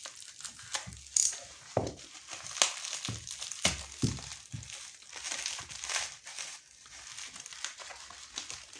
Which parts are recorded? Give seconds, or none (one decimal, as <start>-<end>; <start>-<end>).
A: 0.0-8.8